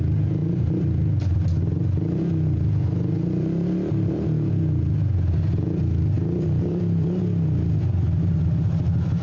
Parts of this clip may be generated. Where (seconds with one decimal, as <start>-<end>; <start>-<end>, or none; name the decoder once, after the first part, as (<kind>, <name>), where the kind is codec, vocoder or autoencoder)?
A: none